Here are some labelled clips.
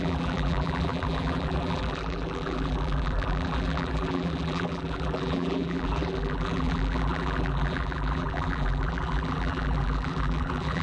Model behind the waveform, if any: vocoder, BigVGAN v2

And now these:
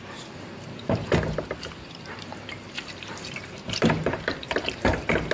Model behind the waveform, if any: vocoder, BigVGAN v2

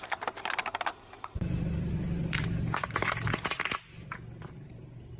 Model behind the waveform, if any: vocoder, BigVGAN v2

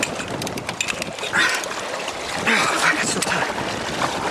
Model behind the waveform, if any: none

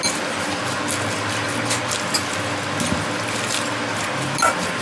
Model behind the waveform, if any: none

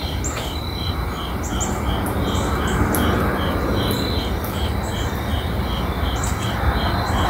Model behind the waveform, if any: none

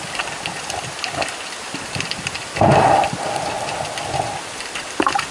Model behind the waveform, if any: vocoder, BigVGAN v2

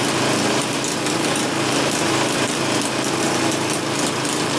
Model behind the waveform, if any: vocoder, BigVGAN v2